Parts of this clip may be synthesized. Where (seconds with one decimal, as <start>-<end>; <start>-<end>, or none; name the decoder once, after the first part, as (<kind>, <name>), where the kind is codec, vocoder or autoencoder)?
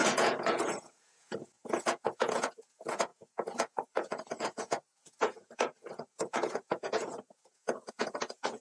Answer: 0.0-8.6 (vocoder, Vocos)